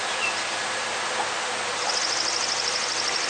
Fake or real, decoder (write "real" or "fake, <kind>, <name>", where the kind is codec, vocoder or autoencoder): real